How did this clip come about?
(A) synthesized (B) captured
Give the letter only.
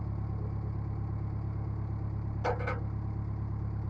B